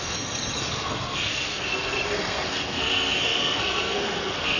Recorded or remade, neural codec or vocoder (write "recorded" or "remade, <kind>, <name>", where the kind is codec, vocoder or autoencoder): remade, codec, SNAC